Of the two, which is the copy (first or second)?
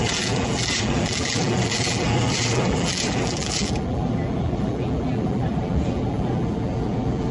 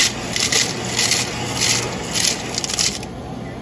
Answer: first